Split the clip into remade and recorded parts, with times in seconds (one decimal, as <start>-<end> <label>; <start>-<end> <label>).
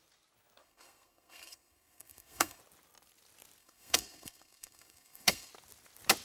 0.0-0.6 recorded; 0.6-2.6 remade; 2.6-3.6 recorded; 3.6-5.5 remade; 5.5-6.2 recorded